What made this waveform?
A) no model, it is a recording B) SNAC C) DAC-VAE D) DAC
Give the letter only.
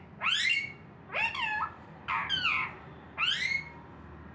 A